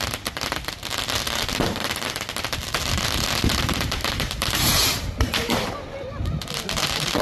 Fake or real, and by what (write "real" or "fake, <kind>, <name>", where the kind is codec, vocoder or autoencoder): real